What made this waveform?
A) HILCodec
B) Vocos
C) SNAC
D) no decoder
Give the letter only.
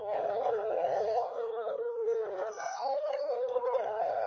C